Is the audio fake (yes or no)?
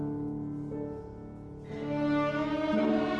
no